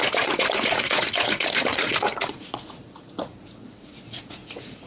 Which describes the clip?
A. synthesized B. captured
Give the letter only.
A